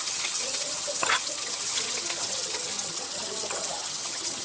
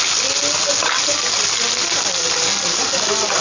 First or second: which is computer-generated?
first